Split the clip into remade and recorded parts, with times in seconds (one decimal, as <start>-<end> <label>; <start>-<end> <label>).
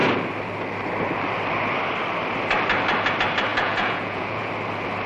0.0-3.5 recorded; 3.5-4.5 remade; 4.5-5.1 recorded